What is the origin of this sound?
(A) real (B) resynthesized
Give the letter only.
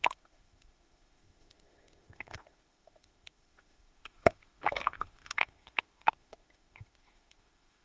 B